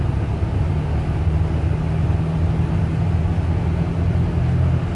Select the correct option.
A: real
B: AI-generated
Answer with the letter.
A